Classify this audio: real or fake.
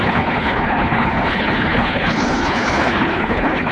fake